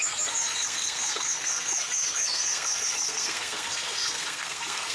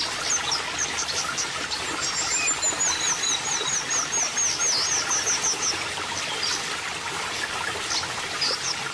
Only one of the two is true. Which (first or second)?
second